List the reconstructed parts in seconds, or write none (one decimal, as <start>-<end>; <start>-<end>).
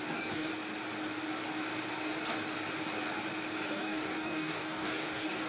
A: 0.0-0.5; 3.7-5.5